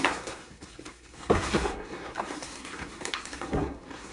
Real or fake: fake